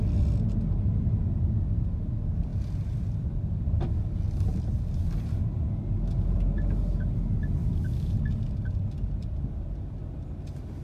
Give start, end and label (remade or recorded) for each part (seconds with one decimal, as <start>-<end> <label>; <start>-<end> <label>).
0.0-7.6 recorded; 7.6-8.1 remade; 8.1-10.8 recorded